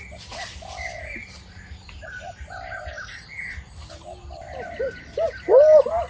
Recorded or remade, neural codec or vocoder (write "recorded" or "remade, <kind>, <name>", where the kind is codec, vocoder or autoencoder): remade, vocoder, BigVGAN v2